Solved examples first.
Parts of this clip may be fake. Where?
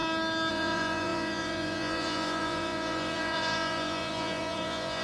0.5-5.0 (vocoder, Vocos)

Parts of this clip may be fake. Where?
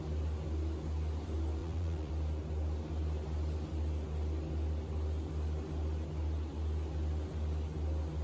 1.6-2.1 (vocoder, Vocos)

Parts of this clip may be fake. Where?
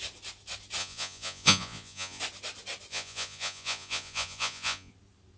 0.8-2.2 (vocoder, Vocos); 2.9-4.9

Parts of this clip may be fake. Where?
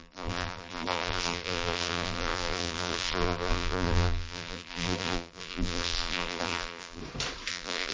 0.0-7.0 (vocoder, BigVGAN v2); 7.5-7.9